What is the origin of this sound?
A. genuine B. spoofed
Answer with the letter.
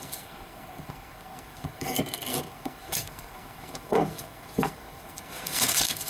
B